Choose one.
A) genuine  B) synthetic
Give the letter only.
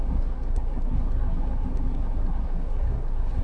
B